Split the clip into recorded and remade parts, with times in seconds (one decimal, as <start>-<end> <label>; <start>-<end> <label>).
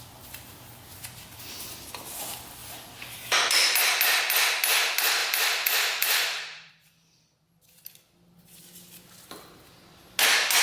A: 0.0-5.2 recorded; 5.2-6.7 remade; 6.7-10.6 recorded